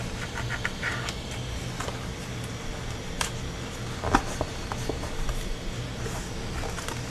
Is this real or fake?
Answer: real